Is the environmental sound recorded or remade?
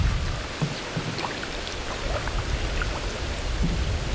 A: recorded